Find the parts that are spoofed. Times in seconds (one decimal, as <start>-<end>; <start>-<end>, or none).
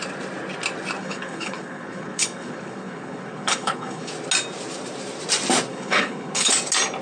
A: 1.0-4.1; 5.7-6.5